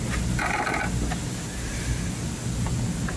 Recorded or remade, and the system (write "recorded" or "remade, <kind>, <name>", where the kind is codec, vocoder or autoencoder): recorded